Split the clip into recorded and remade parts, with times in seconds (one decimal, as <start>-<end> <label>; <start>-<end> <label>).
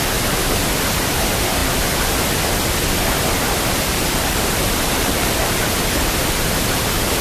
0.0-3.9 recorded; 3.9-5.6 remade; 5.6-7.2 recorded